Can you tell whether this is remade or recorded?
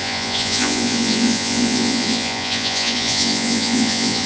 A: remade